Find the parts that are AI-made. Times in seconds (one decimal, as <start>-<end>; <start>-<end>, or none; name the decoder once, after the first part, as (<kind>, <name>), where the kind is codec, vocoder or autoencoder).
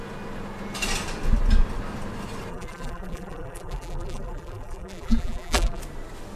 2.5-5.8 (vocoder, BigVGAN v2)